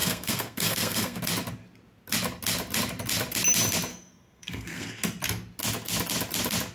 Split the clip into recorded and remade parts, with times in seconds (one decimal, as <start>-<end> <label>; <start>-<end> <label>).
0.0-1.2 remade; 1.2-3.9 recorded; 3.9-5.0 remade; 5.0-6.7 recorded

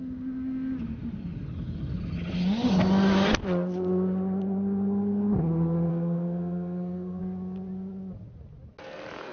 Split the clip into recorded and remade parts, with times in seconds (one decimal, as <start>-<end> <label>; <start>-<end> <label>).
0.0-5.9 recorded; 5.9-7.2 remade; 7.2-9.3 recorded

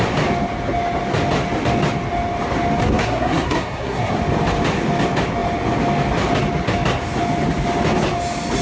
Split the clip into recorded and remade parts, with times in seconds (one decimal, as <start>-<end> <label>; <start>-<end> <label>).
0.0-2.8 recorded; 2.8-4.2 remade; 4.2-8.6 recorded